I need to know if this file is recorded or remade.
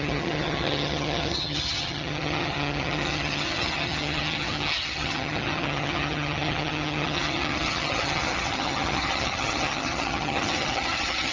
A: remade